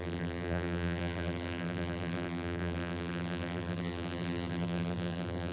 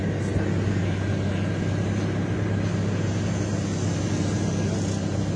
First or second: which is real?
second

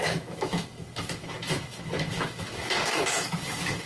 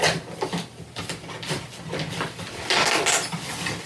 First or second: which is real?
second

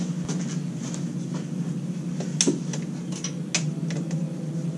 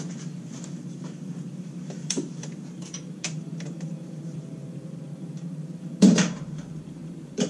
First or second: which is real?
first